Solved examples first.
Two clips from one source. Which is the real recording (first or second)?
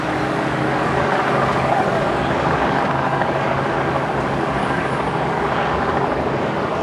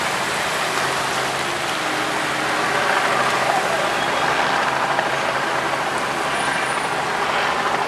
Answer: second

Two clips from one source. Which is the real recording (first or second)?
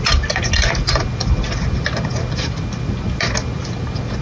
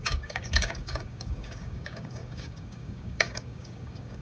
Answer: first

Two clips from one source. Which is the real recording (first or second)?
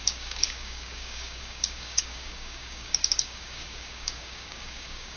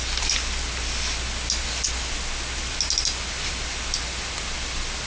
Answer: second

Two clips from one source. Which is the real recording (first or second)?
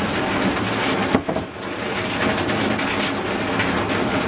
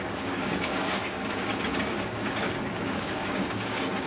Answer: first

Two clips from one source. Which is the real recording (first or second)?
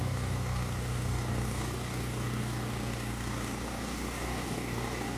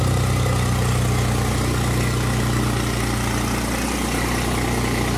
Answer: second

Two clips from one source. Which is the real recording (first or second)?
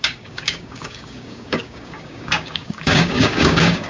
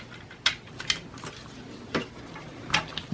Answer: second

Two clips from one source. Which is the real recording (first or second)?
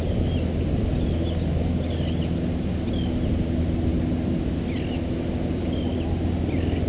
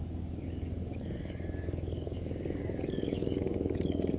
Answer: first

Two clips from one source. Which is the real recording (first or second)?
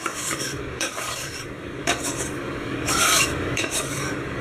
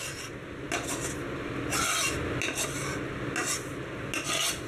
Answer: second